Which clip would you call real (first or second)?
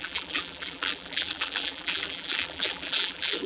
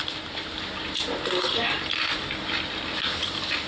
second